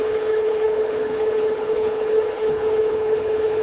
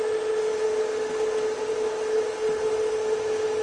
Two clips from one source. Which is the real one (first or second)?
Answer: second